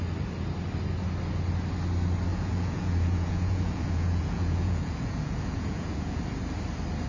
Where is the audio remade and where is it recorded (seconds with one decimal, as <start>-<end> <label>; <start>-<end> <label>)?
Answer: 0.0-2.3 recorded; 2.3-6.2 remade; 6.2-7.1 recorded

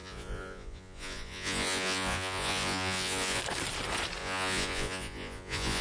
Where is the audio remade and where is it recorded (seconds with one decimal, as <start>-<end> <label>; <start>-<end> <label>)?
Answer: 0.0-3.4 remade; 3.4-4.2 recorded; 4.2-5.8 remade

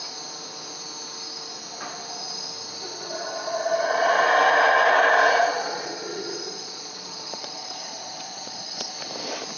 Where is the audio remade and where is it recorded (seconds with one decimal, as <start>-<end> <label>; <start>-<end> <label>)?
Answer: 0.0-2.9 recorded; 2.9-4.2 remade; 4.2-5.4 recorded; 5.4-8.9 remade; 8.9-9.6 recorded